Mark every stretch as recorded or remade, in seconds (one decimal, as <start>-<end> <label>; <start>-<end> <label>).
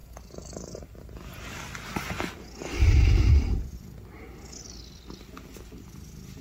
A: 0.0-2.4 remade; 2.4-6.4 recorded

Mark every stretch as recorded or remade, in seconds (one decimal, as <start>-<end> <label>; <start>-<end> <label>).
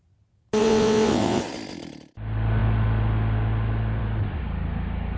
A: 0.0-0.6 recorded; 0.6-1.4 remade; 1.4-5.2 recorded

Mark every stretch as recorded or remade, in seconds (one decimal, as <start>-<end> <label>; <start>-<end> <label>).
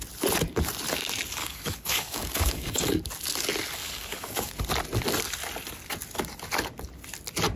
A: 0.0-1.4 recorded; 1.4-3.0 remade; 3.0-3.8 recorded; 3.8-4.5 remade; 4.5-7.6 recorded